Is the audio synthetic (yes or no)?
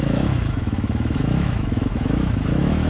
yes